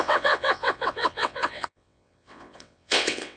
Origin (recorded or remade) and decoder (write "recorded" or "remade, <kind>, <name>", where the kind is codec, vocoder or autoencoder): remade, vocoder, WaveNeXt